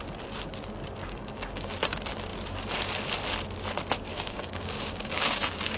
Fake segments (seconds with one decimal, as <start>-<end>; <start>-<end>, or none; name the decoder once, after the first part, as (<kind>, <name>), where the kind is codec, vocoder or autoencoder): 1.0-1.7 (codec, DAC); 4.1-5.8

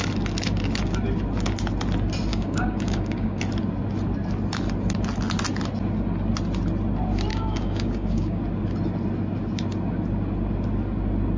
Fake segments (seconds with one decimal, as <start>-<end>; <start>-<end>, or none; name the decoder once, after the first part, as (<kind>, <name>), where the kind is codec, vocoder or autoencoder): 2.3-3.4 (codec, DAC); 7.3-8.4

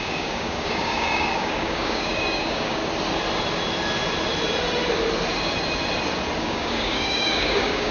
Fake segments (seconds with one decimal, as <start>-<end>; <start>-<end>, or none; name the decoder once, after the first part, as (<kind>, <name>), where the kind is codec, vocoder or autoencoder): 0.0-2.8 (codec, DAC); 6.4-7.9

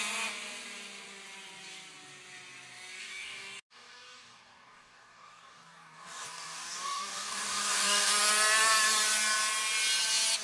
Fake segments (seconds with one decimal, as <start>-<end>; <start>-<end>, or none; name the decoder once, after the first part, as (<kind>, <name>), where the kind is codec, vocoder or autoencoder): 3.0-8.1 (codec, DAC)

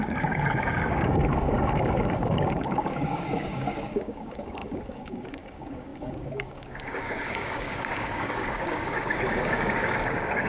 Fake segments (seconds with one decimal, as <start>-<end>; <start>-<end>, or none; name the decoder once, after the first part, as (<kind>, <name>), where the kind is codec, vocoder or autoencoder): 0.0-10.5 (codec, DAC)

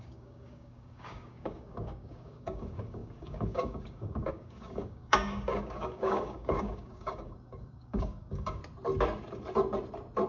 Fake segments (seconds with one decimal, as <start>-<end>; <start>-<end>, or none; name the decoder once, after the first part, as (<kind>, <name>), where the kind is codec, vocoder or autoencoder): 0.0-8.6 (codec, DAC)